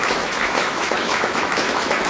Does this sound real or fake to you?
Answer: fake